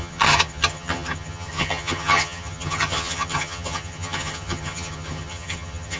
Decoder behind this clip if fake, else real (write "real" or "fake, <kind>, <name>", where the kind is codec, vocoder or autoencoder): fake, vocoder, HiFi-GAN